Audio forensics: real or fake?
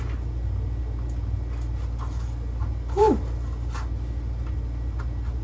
real